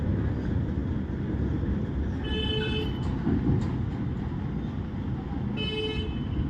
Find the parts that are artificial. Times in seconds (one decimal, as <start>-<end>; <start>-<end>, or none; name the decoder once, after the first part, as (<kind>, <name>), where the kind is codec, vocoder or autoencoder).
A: none